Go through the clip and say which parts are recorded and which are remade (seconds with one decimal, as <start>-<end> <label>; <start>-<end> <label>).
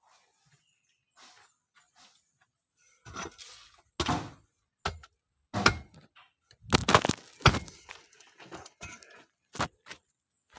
0.0-10.6 recorded